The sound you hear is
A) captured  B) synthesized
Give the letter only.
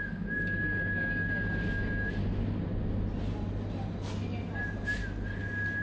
A